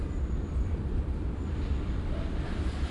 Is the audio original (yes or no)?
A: no